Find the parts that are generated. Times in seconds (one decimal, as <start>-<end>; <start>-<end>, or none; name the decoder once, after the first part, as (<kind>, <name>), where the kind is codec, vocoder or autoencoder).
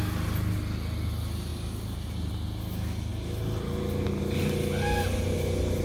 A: none